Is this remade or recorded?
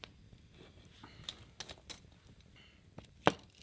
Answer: recorded